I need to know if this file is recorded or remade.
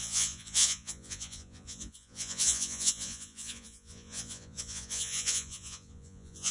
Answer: remade